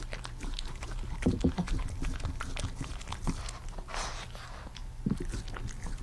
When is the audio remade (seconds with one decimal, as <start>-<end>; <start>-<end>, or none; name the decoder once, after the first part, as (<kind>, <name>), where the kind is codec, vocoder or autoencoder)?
none